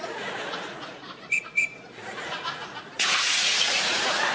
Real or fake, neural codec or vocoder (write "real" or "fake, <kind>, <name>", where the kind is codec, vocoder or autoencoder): fake, vocoder, Vocos